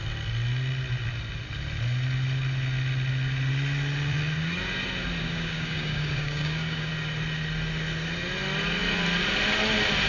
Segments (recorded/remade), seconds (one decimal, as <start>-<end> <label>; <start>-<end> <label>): 0.0-5.2 recorded; 5.2-6.9 remade; 6.9-10.1 recorded